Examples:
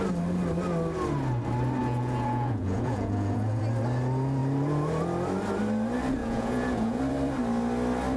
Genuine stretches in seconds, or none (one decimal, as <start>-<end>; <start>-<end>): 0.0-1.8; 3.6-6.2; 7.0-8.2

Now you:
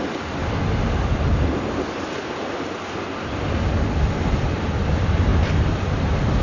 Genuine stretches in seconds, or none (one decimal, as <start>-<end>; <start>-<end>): 0.0-6.4

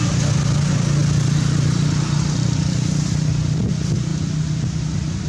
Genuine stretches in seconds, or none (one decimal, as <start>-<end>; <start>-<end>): 0.0-5.3

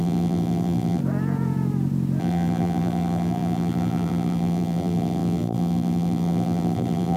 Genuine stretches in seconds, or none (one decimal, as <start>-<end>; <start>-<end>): 1.0-2.2